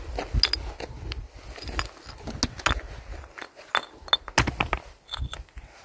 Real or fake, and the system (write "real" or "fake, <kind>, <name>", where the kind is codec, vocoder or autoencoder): real